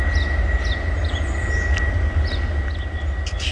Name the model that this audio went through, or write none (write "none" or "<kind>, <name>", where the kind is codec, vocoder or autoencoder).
none